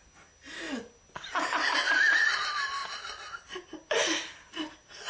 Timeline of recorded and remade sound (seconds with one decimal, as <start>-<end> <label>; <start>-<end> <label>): 0.0-5.1 recorded